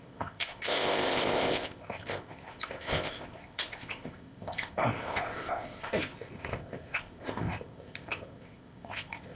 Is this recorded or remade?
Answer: remade